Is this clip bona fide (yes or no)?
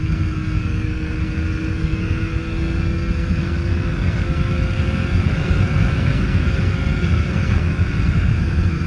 no